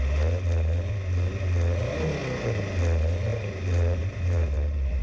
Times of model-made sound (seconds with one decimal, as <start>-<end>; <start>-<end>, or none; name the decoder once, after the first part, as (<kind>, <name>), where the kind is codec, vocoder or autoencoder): 2.2-2.8 (vocoder, BigVGAN v2); 3.3-5.0